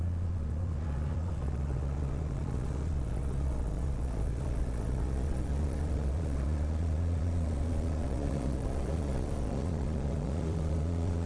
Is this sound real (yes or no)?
no